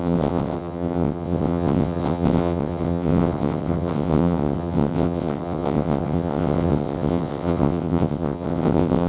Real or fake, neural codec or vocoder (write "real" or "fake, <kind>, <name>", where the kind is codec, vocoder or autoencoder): fake, vocoder, WaveNeXt